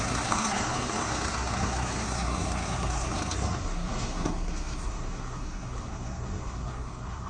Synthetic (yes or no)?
yes